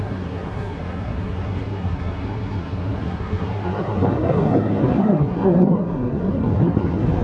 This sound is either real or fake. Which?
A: fake